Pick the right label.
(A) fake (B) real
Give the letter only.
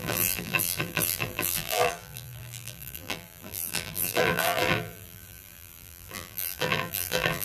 A